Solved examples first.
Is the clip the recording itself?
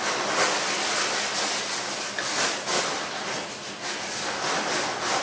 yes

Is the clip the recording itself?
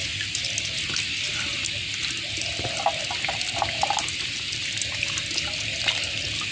yes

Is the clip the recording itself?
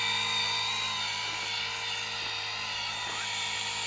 yes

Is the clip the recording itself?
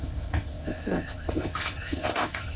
no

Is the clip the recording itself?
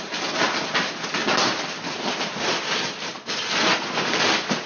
yes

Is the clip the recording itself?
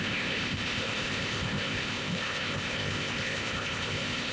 no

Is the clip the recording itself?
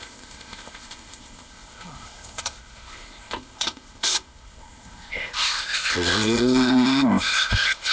no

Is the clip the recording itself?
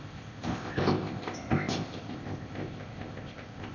no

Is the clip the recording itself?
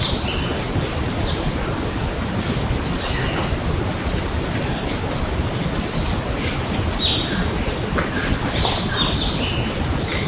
yes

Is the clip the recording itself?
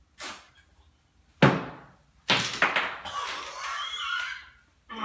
yes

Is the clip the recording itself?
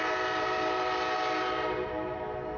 yes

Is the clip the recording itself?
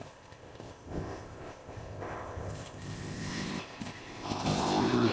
no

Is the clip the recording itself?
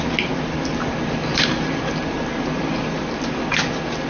yes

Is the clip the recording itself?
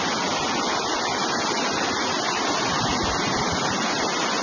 yes